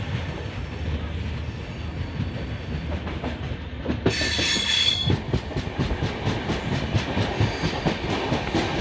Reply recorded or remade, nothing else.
recorded